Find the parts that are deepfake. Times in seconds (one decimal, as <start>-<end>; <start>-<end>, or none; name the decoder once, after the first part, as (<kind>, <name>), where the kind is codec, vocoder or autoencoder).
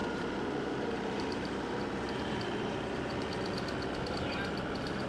0.0-3.1 (vocoder, BigVGAN v2)